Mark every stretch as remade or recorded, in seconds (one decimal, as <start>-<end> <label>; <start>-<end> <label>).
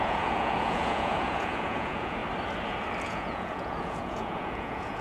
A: 0.0-2.2 remade; 2.2-3.0 recorded; 3.0-5.0 remade